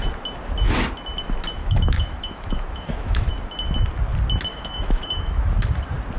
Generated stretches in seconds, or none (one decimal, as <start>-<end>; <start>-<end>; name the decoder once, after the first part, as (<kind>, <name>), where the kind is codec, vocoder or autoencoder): 1.6-3.3 (autoencoder, DAC-VAE); 4.5-5.5